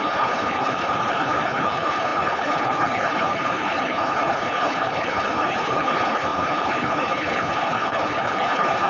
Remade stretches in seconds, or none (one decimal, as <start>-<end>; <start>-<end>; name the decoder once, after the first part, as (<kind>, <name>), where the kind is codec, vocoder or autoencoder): 0.0-8.9 (codec, HILCodec)